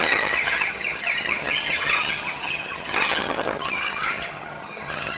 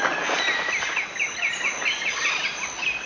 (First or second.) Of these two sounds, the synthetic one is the first